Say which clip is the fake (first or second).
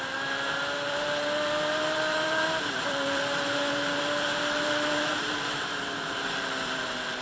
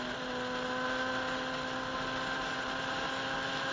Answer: first